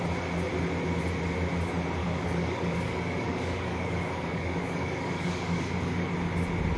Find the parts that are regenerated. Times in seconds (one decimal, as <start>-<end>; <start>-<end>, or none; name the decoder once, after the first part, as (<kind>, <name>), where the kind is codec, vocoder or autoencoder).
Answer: 2.0-6.1 (codec, DAC)